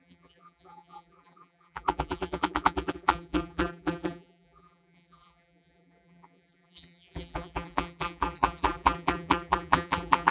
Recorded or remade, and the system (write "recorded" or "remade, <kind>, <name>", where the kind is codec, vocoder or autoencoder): remade, vocoder, BigVGAN v2